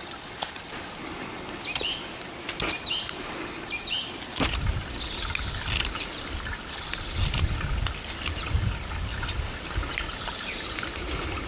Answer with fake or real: real